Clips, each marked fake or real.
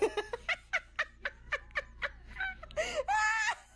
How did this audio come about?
real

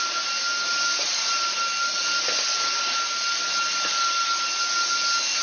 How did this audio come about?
real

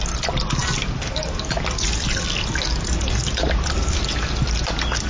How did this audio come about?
real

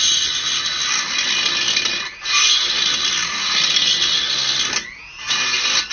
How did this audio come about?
real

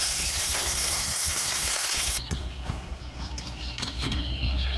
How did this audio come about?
fake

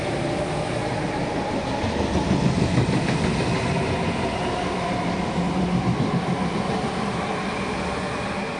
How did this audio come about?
real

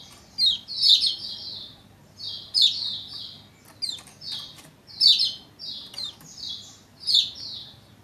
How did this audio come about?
real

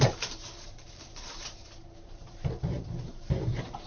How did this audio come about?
fake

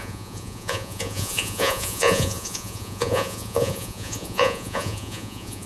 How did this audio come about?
fake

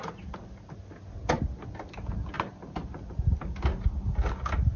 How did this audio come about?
real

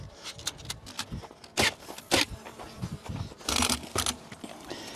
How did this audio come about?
real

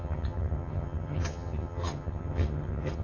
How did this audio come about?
fake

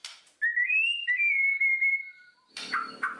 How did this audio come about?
real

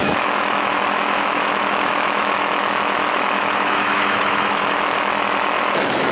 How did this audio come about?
fake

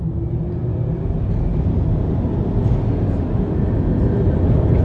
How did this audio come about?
real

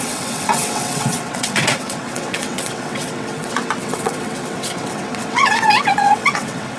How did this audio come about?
fake